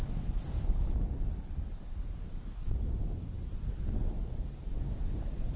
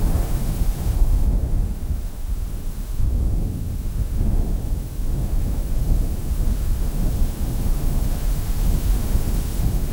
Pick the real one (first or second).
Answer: first